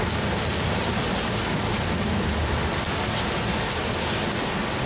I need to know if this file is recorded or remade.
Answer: recorded